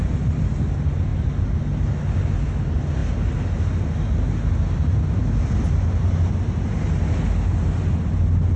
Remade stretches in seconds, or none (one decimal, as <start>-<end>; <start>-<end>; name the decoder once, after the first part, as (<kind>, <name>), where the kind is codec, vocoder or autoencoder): none